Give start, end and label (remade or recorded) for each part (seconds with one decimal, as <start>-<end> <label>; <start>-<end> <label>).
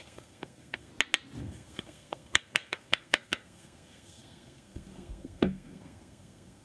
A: 0.0-0.9 remade; 0.9-1.4 recorded; 1.4-6.6 remade